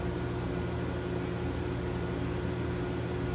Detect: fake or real real